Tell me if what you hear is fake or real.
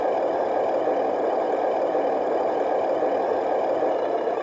real